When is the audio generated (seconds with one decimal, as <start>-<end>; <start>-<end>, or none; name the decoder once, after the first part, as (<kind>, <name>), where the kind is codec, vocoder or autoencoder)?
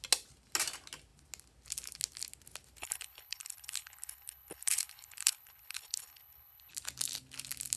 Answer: 2.8-6.7 (codec, HILCodec)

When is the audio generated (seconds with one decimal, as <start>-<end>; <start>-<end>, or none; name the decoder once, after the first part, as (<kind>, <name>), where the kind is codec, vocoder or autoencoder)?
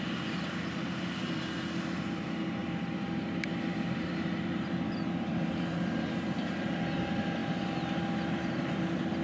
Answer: 0.0-9.2 (vocoder, BigVGAN v2)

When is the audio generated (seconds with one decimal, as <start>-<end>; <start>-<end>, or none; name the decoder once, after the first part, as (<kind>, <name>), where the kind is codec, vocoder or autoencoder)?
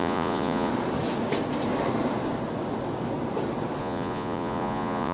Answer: 0.0-0.7 (vocoder, Vocos); 3.8-5.1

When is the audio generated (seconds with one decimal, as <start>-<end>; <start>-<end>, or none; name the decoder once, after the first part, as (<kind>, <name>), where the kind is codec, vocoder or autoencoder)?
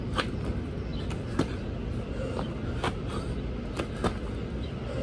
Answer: none